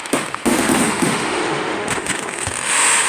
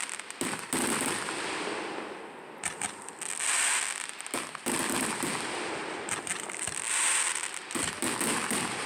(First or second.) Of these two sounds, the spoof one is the first